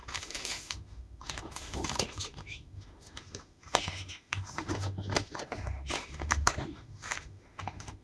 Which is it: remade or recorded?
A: remade